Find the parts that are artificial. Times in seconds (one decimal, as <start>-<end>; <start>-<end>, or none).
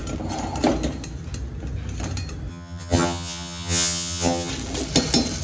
2.5-4.5